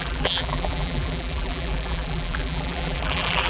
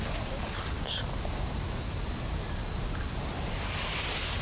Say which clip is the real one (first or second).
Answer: second